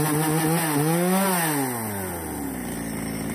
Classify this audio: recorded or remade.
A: recorded